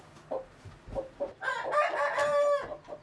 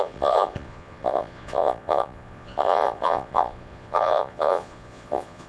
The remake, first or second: second